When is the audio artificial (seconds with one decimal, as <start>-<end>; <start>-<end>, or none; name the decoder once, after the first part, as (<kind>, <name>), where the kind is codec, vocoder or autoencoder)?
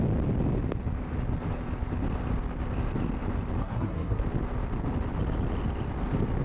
3.6-4.2 (codec, SNAC)